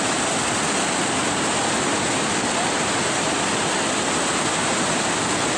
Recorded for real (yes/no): yes